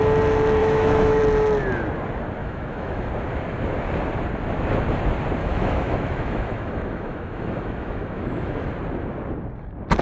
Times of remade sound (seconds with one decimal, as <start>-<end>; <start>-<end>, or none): 0.6-1.2; 2.4-3.1; 5.4-8.7